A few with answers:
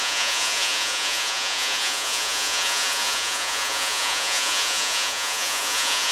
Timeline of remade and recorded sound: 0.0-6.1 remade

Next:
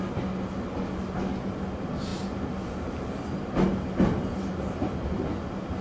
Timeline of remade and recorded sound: 0.0-5.8 recorded

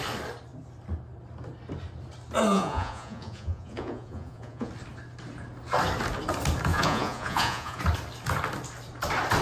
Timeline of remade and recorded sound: 0.0-2.5 recorded; 2.5-4.7 remade; 4.7-6.7 recorded; 6.7-7.8 remade; 7.8-9.4 recorded

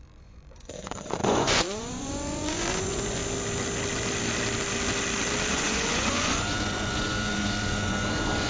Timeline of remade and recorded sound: 0.0-3.2 remade; 3.2-5.5 recorded; 5.5-8.5 remade

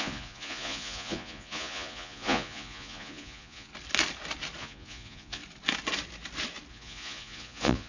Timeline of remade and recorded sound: 0.0-3.7 remade; 3.7-4.6 recorded; 4.6-5.4 remade; 5.4-6.7 recorded; 6.7-7.9 remade